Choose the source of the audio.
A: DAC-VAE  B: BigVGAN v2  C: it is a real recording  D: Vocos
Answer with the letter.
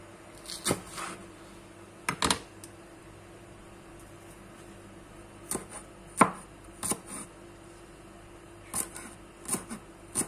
C